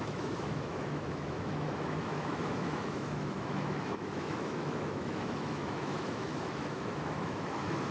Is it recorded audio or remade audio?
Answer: remade